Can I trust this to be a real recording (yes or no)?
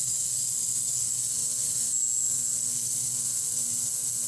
yes